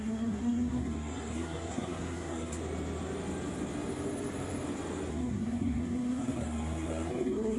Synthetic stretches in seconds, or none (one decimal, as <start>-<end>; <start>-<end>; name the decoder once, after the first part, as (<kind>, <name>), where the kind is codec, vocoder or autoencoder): 0.0-2.6 (codec, SNAC); 5.1-7.6